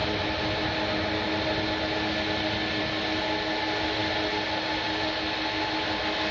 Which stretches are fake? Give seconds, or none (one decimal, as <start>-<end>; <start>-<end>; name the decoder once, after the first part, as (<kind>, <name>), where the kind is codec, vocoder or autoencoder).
none